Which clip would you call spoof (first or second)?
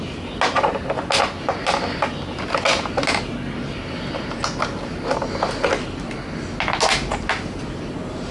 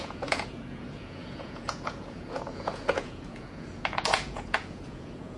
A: second